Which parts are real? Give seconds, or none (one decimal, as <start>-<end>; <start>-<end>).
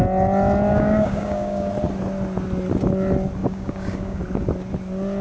0.0-0.7; 1.7-3.4; 4.2-5.2